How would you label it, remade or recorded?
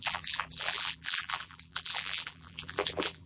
remade